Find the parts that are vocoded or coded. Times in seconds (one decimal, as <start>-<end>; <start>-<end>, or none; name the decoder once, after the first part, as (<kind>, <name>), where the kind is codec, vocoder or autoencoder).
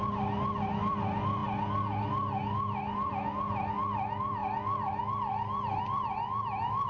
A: none